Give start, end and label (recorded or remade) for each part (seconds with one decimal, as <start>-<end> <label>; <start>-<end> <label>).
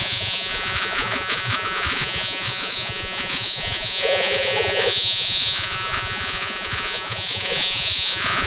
0.0-8.5 remade